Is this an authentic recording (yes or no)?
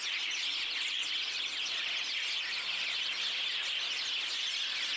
yes